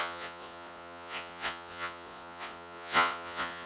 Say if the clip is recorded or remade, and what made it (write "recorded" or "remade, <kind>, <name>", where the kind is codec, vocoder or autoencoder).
remade, vocoder, Vocos